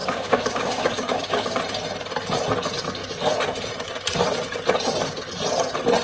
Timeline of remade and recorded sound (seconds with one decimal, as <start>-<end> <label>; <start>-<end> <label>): 0.0-1.6 remade; 1.6-6.0 recorded